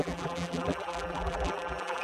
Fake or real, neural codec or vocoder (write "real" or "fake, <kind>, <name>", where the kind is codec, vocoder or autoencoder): fake, vocoder, BigVGAN v2